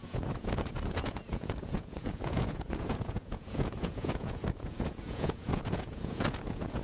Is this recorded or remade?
remade